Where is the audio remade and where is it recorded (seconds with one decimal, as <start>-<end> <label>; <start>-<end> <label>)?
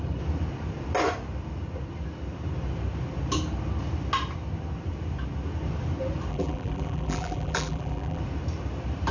0.0-6.3 recorded; 6.3-8.2 remade; 8.2-9.1 recorded